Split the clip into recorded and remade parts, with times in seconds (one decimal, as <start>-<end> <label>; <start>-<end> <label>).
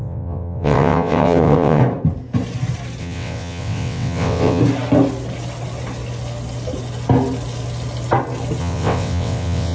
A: 0.0-1.8 remade; 1.8-3.0 recorded; 3.0-4.6 remade; 4.6-8.6 recorded; 8.6-9.7 remade